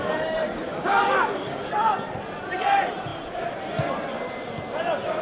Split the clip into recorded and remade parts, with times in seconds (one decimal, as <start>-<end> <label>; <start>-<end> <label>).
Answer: 0.0-0.7 recorded; 0.7-1.7 remade; 1.7-5.2 recorded